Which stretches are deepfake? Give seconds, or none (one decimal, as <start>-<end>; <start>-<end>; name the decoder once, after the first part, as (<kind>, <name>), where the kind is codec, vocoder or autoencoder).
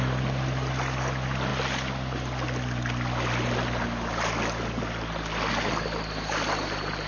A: none